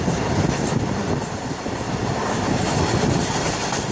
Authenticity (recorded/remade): recorded